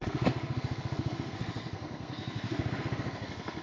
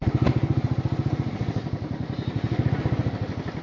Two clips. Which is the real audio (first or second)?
second